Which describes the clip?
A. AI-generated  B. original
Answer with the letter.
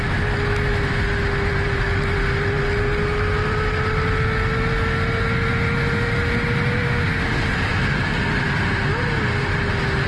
B